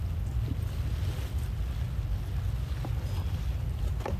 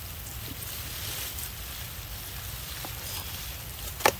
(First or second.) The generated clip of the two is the second